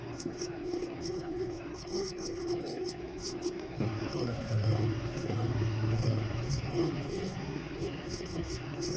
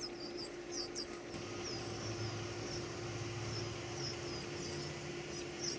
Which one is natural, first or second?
second